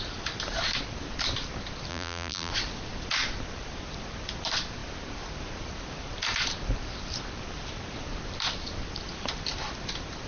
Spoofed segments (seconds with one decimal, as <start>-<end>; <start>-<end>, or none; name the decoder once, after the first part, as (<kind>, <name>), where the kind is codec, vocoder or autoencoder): 1.9-2.5 (vocoder, BigVGAN v2)